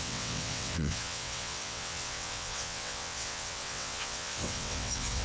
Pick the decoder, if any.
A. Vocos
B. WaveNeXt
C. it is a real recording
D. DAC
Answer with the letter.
B